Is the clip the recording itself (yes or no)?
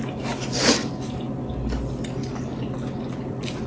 yes